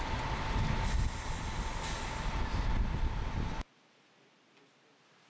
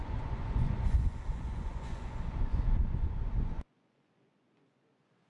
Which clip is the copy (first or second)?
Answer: second